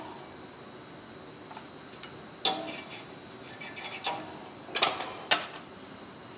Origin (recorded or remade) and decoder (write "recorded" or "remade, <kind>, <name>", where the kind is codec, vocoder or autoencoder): recorded